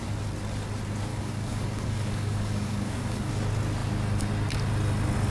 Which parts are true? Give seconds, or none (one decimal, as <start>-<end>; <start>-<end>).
0.0-1.1; 3.3-5.3